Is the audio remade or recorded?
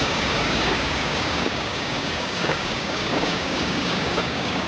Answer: remade